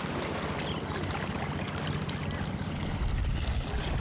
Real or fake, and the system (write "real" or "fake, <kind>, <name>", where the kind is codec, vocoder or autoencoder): real